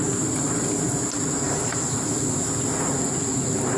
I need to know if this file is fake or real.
real